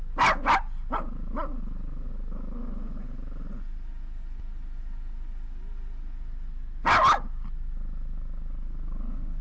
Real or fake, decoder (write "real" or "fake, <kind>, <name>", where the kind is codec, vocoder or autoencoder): real